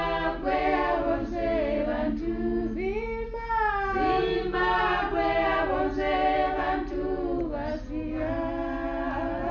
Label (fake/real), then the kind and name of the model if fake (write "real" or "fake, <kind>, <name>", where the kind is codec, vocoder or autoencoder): real